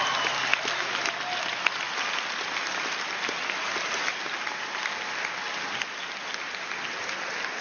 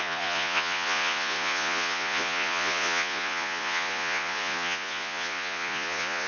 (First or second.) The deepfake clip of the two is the second